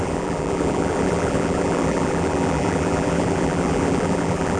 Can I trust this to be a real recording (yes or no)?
no